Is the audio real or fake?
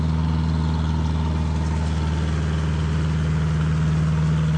real